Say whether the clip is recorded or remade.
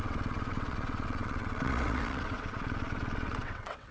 remade